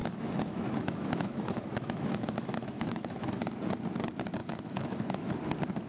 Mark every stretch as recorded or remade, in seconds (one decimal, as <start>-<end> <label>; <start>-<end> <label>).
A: 0.0-3.5 remade; 3.5-4.4 recorded; 4.4-5.3 remade; 5.3-5.9 recorded